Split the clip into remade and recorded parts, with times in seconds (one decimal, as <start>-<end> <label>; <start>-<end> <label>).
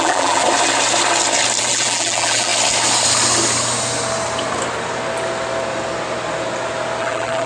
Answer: 0.0-0.4 remade; 0.4-1.6 recorded; 1.6-2.5 remade; 2.5-7.0 recorded; 7.0-7.5 remade